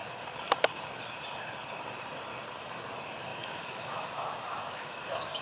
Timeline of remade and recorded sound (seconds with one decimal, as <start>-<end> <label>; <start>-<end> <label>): 0.0-3.3 recorded; 3.3-5.4 remade